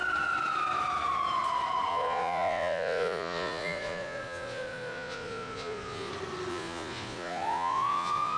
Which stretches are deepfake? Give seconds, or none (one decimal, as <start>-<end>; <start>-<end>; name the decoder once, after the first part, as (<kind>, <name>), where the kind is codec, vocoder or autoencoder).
1.9-6.1 (vocoder, Vocos); 6.5-8.4